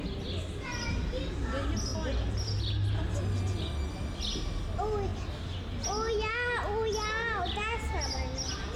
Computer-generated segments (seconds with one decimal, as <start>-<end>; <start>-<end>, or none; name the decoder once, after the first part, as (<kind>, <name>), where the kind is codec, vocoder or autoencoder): none